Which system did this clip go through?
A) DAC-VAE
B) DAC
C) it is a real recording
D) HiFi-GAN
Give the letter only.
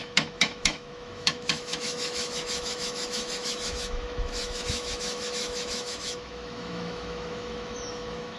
A